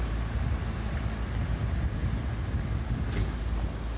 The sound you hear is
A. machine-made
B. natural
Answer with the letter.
B